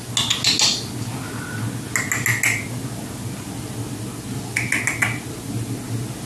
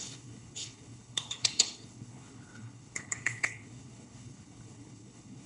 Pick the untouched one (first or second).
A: first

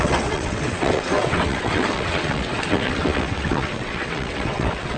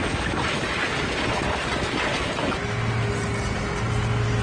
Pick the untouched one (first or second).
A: second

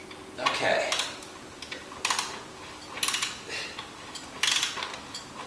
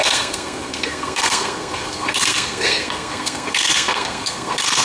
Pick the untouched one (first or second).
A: first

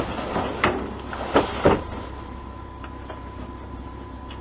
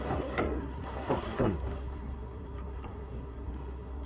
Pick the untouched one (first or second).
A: first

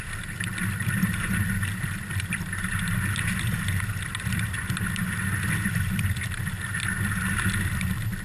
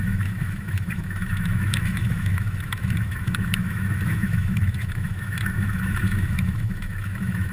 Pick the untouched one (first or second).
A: first